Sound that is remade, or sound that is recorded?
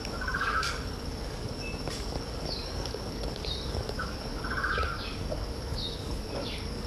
remade